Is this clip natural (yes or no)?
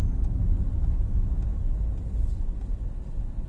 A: yes